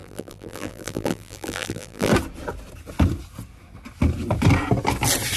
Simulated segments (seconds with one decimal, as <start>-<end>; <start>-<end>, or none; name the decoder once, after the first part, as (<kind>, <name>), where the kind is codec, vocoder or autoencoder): 0.0-2.1 (vocoder, BigVGAN v2)